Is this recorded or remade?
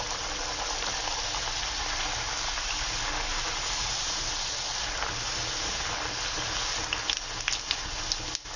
recorded